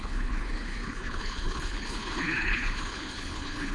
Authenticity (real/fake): fake